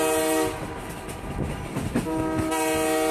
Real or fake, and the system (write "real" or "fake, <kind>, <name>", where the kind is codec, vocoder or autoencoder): real